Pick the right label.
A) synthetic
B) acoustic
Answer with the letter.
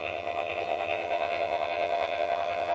A